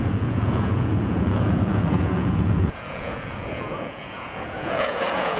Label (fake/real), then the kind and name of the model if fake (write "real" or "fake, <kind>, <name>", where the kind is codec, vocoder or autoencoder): fake, vocoder, Vocos